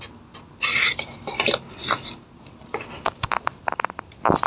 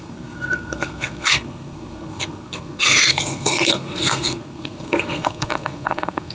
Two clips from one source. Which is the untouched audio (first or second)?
first